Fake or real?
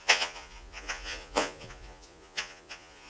fake